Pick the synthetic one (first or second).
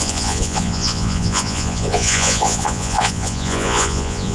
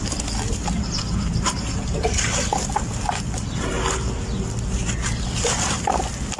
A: first